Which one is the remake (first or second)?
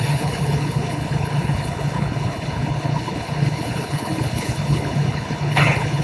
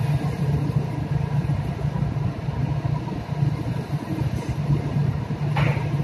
first